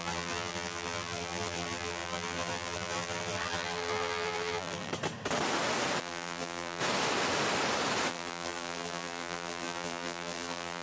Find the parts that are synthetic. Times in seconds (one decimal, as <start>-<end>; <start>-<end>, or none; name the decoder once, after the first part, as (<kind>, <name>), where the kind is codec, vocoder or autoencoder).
0.0-4.9 (vocoder, BigVGAN v2); 6.0-6.8; 8.1-10.8